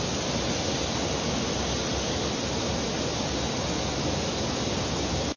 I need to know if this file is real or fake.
real